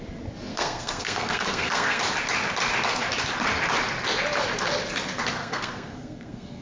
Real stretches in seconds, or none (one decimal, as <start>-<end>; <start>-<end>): 0.0-0.5; 2.0-5.4